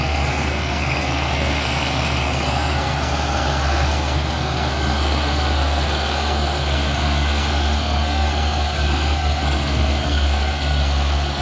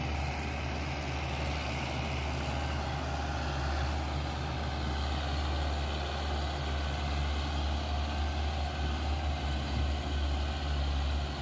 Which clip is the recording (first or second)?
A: second